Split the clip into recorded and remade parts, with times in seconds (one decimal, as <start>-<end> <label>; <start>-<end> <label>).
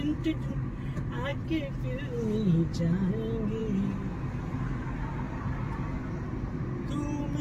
0.0-5.1 recorded; 5.1-5.6 remade; 5.6-7.4 recorded